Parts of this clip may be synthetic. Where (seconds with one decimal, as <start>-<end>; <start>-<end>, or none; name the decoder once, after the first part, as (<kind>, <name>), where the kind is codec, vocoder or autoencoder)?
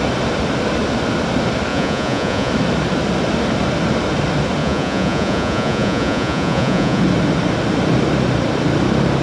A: 1.7-2.5 (vocoder, Vocos); 4.6-7.0